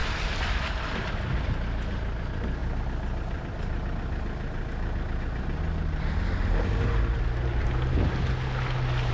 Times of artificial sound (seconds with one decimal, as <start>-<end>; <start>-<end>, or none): none